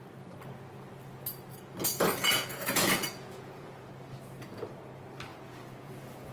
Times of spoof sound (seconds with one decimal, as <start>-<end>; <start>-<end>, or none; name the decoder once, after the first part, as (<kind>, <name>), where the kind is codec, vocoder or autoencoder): 1.8-3.9 (vocoder, Vocos); 5.3-6.3